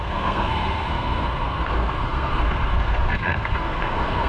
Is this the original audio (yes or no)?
no